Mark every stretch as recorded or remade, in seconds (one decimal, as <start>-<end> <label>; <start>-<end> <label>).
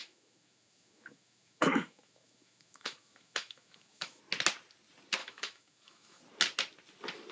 0.0-4.2 remade; 4.2-5.2 recorded; 5.2-6.2 remade; 6.2-7.3 recorded